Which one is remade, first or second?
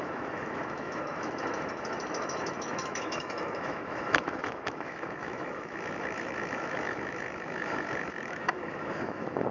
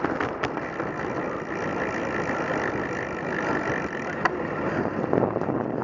first